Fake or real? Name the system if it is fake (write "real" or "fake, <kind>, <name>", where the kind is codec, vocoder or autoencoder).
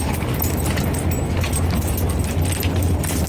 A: real